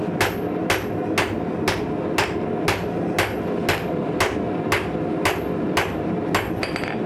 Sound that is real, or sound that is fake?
real